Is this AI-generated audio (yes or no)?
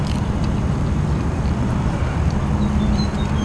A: no